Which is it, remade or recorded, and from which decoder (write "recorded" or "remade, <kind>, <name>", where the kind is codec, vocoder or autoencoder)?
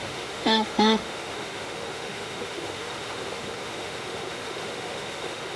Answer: remade, autoencoder, DAC-VAE